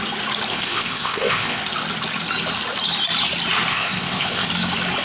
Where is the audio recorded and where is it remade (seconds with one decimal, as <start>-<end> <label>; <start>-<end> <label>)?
0.0-0.5 recorded; 0.5-1.6 remade; 1.6-3.7 recorded; 3.7-4.5 remade; 4.5-5.0 recorded